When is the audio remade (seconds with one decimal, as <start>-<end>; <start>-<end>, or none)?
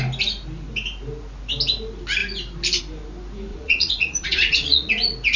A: 3.5-4.9